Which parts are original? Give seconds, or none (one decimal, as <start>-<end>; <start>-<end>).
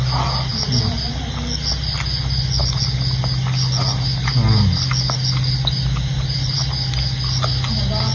0.0-8.1